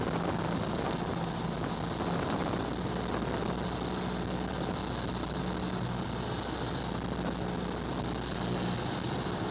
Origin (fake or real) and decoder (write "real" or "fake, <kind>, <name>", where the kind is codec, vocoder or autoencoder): real